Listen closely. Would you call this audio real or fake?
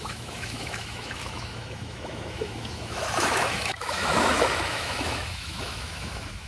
fake